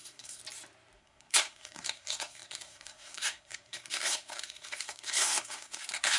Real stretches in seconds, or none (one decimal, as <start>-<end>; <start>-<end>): 0.4-1.0